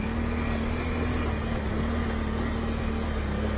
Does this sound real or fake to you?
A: real